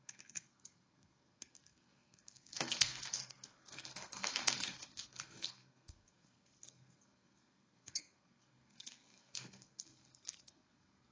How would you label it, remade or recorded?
remade